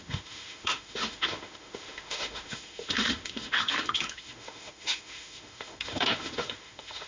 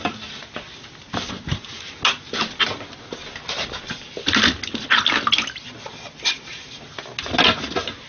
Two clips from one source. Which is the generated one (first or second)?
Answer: first